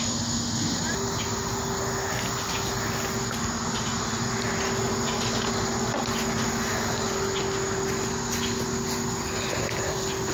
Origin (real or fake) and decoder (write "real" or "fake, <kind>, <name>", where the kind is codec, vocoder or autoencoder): real